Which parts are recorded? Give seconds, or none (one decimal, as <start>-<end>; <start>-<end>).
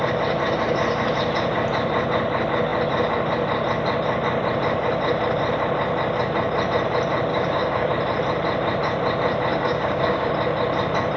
0.0-7.3; 7.9-9.5; 10.3-11.2